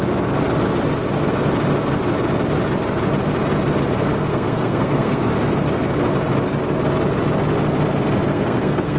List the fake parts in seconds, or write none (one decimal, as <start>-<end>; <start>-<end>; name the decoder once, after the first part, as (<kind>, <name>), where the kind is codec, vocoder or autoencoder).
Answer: 4.3-5.3 (codec, SNAC); 8.3-9.0

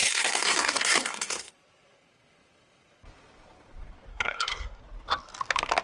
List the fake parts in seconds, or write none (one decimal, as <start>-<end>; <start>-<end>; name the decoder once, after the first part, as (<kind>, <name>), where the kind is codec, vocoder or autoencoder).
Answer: 0.0-1.5 (codec, SNAC); 4.1-4.8

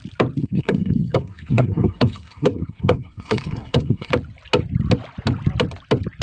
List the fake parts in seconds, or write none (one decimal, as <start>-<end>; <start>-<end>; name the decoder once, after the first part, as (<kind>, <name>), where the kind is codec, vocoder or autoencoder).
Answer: 0.4-4.1 (codec, SNAC)

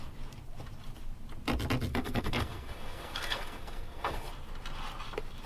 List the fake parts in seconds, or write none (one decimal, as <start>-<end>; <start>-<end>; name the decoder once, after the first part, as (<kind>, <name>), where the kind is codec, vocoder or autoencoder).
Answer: 1.9-4.3 (codec, SNAC)